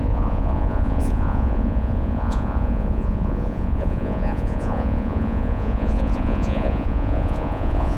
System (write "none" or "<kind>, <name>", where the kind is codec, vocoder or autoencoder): vocoder, Vocos